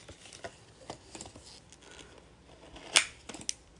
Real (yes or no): yes